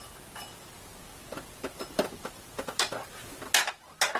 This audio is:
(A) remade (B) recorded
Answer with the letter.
B